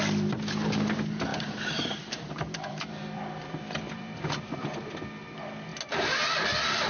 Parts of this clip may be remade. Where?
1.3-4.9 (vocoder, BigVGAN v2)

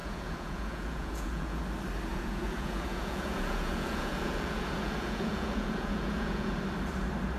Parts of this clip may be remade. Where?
0.0-1.6 (vocoder, Vocos); 2.1-6.5

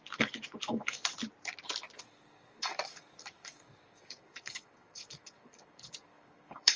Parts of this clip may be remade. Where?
0.0-1.1 (codec, DAC); 2.0-6.8

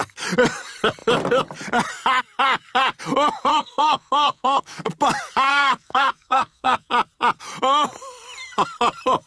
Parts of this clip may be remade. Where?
3.5-4.9 (codec, SNAC); 5.5-6.9

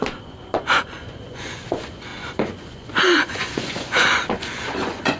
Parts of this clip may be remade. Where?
0.0-5.2 (vocoder, Vocos)

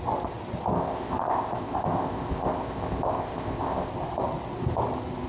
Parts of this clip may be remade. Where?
0.7-3.9 (codec, ZipCodec)